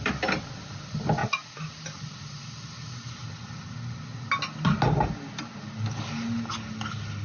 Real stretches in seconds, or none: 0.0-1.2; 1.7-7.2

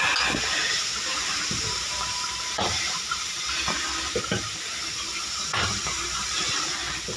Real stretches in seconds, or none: 0.0-1.1; 3.6-5.1; 6.4-7.2